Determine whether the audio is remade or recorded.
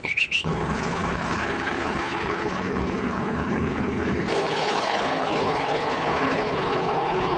remade